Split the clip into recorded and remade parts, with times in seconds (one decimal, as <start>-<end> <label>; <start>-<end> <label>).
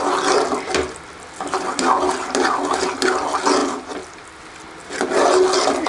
0.0-5.9 recorded